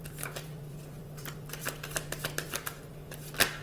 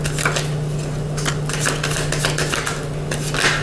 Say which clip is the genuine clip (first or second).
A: second